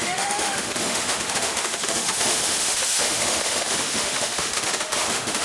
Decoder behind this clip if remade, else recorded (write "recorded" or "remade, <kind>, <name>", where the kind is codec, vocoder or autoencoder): remade, autoencoder, DAC-VAE